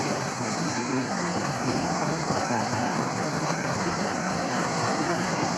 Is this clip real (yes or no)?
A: no